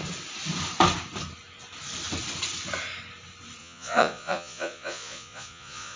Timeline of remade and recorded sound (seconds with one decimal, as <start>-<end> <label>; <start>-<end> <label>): 0.0-3.6 recorded; 3.6-6.0 remade